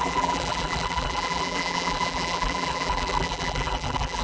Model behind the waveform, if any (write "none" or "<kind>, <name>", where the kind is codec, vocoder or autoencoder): vocoder, BigVGAN v2